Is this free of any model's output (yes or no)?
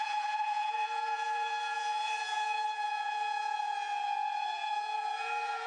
no